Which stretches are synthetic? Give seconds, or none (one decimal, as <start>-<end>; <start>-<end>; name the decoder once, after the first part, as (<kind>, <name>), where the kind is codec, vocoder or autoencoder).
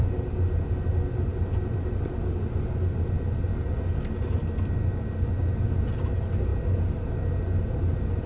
none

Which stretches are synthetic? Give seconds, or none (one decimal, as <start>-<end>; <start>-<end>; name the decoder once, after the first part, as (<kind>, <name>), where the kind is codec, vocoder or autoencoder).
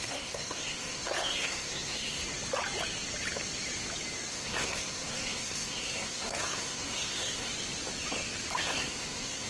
0.0-2.2 (codec, SNAC); 4.3-7.5; 8.6-9.5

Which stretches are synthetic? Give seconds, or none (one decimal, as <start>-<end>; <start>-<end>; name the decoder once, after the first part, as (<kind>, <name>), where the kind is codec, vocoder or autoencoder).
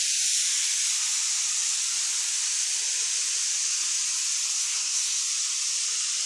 4.6-5.2 (codec, SNAC)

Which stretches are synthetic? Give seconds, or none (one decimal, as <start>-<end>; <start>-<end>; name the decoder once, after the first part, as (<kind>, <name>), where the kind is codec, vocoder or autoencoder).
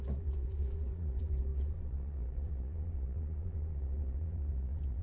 0.0-5.0 (vocoder, Vocos)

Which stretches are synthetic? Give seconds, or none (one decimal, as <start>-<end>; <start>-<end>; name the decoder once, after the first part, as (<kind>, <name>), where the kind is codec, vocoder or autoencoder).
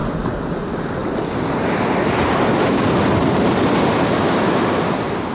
none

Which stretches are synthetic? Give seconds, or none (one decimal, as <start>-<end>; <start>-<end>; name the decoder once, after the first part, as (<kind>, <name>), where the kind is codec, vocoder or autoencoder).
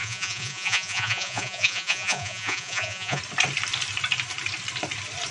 0.0-3.2 (vocoder, Vocos)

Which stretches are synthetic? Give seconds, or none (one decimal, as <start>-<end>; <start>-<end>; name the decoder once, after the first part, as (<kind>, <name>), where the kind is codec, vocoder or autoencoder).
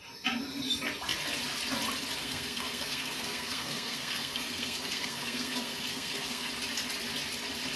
2.2-6.5 (codec, SNAC)